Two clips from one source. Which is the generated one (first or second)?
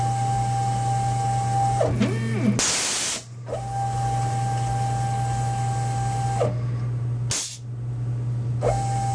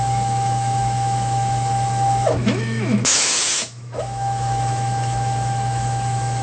second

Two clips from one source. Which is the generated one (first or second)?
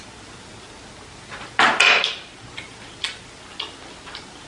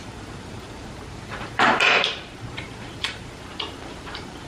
second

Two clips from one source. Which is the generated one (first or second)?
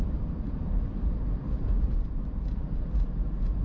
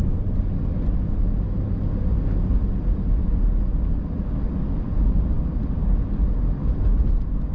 first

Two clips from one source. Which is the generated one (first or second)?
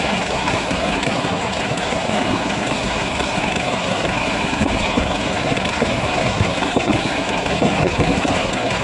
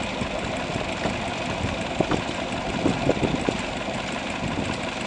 first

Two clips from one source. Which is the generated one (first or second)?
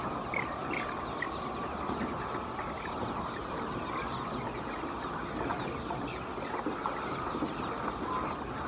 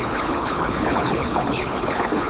second